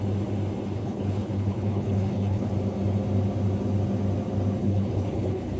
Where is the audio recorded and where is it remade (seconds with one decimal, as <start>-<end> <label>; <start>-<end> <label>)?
0.0-0.8 recorded; 0.8-2.5 remade; 2.5-4.6 recorded; 4.6-5.6 remade